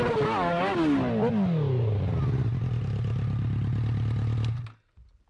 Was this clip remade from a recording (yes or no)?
no